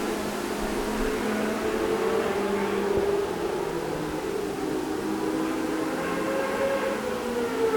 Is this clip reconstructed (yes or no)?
no